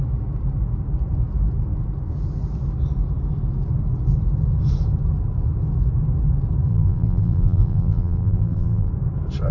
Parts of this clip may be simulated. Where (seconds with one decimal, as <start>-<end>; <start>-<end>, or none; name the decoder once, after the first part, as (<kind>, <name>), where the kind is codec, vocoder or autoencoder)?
6.7-8.9 (vocoder, BigVGAN v2)

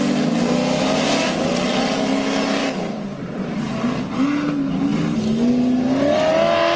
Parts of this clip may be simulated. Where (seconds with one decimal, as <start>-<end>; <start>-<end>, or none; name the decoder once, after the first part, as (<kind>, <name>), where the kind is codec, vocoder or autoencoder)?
2.6-3.6 (vocoder, BigVGAN v2)